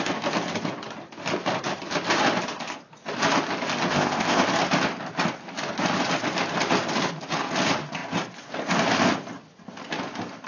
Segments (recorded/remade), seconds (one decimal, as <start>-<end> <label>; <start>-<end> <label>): 0.0-3.9 recorded; 3.9-4.4 remade; 4.4-10.5 recorded